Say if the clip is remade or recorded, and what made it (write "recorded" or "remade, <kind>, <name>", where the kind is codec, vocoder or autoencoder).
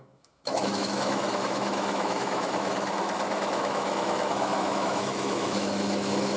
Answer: remade, autoencoder, DAC-VAE